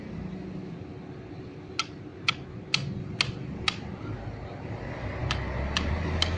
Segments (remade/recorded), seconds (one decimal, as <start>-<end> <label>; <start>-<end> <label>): 0.0-6.4 recorded